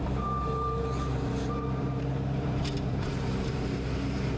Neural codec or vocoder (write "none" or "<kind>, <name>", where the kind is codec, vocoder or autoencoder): vocoder, BigVGAN v2